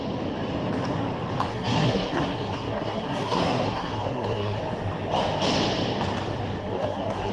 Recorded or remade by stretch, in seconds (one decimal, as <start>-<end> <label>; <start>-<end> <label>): 0.0-1.5 recorded; 1.5-4.6 remade; 4.6-6.6 recorded; 6.6-7.3 remade